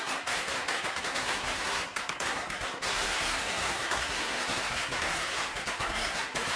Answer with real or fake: fake